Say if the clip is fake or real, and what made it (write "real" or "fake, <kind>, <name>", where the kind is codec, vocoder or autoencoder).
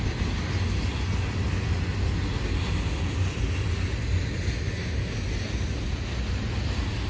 real